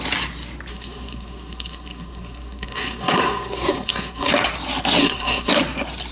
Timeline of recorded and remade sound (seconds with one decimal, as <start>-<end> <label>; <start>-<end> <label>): 0.0-0.7 recorded; 0.7-4.3 remade; 4.3-5.0 recorded; 5.0-5.5 remade; 5.5-6.1 recorded